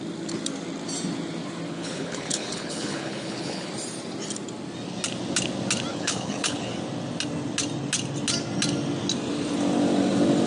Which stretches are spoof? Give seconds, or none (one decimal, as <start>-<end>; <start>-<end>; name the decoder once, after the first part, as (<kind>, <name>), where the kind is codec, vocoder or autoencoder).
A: 1.7-3.7 (codec, HILCodec); 5.9-6.7